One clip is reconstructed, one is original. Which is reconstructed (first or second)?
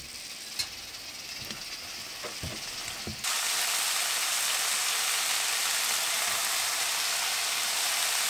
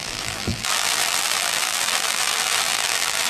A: second